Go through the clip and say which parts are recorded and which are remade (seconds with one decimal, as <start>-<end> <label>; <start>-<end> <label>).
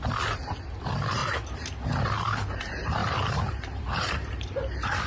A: 0.0-1.2 recorded; 1.2-1.8 remade; 1.8-3.0 recorded; 3.0-4.6 remade; 4.6-5.1 recorded